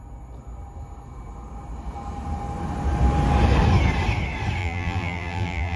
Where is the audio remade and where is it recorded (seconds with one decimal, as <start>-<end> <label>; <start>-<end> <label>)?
0.0-4.6 recorded; 4.6-5.8 remade